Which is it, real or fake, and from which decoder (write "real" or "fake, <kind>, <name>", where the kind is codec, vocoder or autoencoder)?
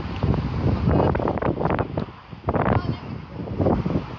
real